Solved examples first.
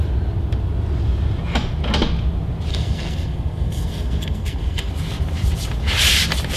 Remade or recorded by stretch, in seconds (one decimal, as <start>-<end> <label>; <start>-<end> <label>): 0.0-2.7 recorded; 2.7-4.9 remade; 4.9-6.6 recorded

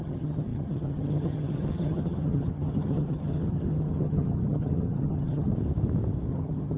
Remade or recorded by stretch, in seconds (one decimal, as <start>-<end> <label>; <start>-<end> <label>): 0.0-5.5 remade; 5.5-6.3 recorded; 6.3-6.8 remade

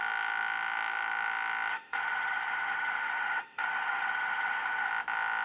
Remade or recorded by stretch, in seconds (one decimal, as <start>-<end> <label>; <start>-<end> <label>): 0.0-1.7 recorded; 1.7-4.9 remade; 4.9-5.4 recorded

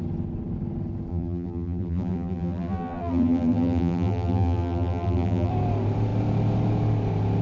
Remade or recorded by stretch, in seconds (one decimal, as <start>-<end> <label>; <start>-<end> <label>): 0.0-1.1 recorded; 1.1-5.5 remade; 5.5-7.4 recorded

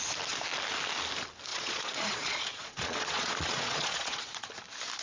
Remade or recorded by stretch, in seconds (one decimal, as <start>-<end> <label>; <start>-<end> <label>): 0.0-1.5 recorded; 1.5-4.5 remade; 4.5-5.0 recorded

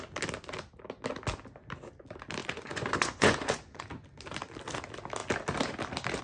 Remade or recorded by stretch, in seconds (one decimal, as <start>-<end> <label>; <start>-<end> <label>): 0.0-2.4 recorded; 2.4-3.8 remade; 3.8-6.2 recorded

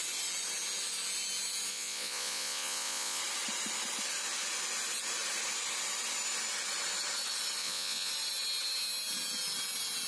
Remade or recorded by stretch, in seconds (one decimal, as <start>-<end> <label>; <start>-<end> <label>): 0.0-1.7 recorded; 1.7-3.2 remade; 3.2-7.6 recorded; 7.6-8.1 remade; 8.1-10.1 recorded